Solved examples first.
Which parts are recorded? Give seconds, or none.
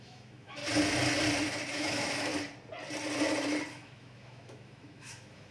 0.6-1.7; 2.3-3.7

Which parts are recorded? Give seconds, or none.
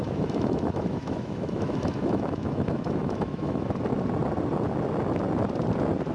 3.7-6.1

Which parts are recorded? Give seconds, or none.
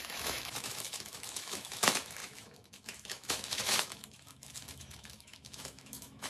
none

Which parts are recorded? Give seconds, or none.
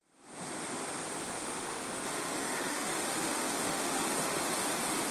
0.0-1.3; 4.4-5.1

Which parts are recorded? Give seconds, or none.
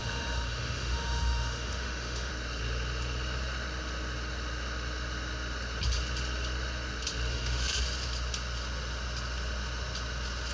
2.3-7.3; 7.8-10.5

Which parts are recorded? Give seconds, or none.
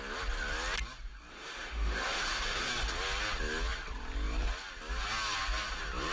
0.0-1.3; 2.7-6.1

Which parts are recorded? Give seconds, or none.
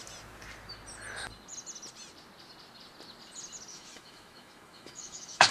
0.0-3.7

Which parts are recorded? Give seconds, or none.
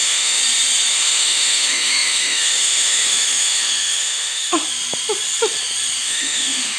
0.4-0.9; 4.6-6.0